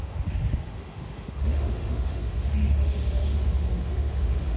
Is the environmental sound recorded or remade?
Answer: remade